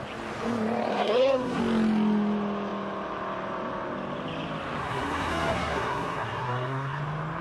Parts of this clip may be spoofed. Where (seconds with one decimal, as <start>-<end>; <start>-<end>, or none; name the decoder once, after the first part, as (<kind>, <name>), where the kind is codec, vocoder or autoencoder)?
0.9-1.6 (codec, SNAC); 4.8-7.0